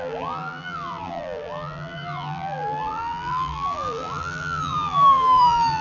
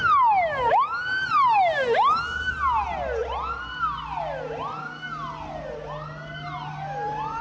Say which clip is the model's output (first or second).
first